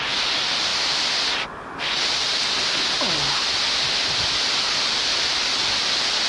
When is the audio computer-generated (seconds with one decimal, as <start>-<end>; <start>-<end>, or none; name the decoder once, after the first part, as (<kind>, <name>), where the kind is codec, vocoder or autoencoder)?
none